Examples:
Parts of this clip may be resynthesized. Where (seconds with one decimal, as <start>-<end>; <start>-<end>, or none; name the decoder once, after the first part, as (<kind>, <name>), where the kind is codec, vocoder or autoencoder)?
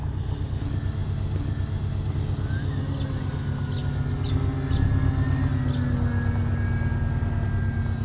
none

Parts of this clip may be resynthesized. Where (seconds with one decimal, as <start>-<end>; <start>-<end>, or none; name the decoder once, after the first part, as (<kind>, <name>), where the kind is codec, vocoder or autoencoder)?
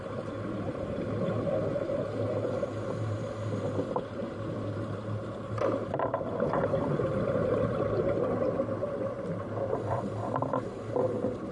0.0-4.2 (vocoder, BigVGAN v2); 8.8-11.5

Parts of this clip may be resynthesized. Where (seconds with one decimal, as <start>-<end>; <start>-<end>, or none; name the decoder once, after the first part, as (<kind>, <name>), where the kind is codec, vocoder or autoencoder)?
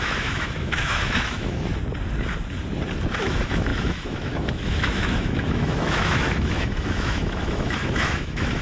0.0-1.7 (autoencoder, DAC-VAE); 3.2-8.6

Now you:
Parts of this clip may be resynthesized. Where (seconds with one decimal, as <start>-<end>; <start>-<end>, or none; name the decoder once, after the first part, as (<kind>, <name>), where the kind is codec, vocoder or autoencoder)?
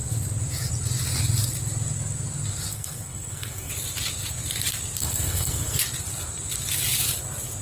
2.7-3.7 (codec, SNAC); 5.0-5.8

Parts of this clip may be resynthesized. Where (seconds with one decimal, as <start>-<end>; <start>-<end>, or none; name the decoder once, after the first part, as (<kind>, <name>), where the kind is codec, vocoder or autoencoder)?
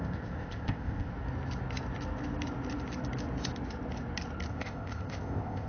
0.0-1.1 (codec, ZipCodec); 4.5-5.7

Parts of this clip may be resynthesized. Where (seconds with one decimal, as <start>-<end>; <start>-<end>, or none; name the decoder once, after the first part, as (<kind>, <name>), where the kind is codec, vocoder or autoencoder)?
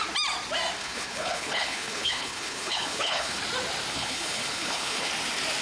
0.8-3.4 (codec, HILCodec); 3.9-5.1